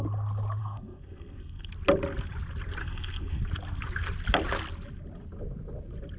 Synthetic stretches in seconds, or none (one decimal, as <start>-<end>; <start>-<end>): 0.6-1.7; 2.8-3.4